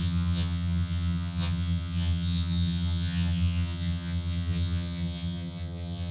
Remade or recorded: remade